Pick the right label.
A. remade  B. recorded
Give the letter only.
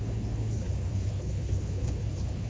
A